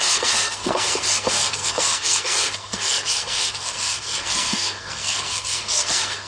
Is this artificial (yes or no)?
yes